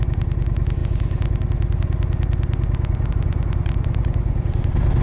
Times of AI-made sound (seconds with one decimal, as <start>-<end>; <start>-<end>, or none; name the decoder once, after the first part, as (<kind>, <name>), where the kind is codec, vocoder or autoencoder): none